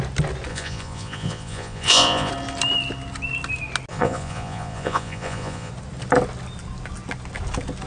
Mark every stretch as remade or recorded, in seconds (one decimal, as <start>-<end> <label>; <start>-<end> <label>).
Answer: 0.0-0.5 recorded; 0.5-2.3 remade; 2.3-3.9 recorded; 3.9-5.7 remade; 5.7-7.9 recorded